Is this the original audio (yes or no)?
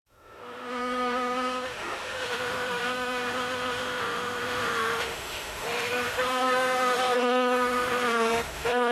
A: no